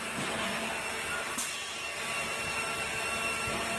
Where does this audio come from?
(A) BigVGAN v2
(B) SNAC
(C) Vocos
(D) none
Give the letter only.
D